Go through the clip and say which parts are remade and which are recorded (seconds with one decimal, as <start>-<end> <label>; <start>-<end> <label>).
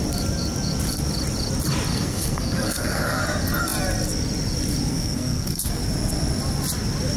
0.0-1.9 recorded; 1.9-3.2 remade; 3.2-4.9 recorded; 4.9-5.8 remade; 5.8-7.2 recorded